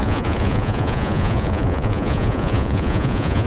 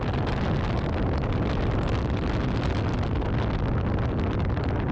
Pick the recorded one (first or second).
second